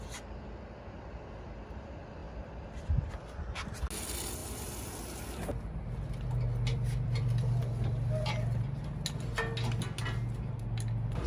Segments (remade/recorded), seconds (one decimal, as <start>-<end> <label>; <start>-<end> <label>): 0.0-4.4 recorded; 4.4-4.9 remade; 4.9-6.7 recorded; 6.7-7.6 remade; 7.6-11.3 recorded